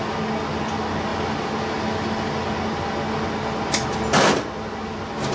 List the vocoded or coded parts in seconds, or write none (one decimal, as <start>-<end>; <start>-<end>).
none